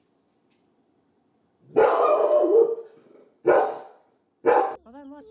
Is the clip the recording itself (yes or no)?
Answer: yes